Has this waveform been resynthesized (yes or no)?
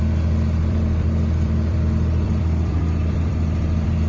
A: yes